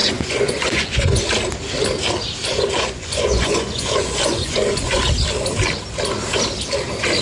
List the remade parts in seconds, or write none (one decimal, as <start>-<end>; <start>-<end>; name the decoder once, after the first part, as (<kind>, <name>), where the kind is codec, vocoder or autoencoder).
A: 0.0-1.2 (vocoder, Vocos); 2.5-5.0